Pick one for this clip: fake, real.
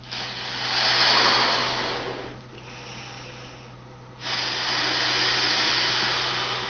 real